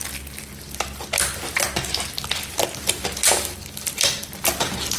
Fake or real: real